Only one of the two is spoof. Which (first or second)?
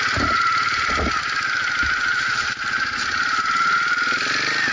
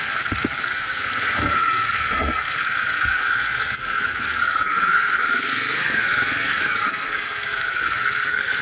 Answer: second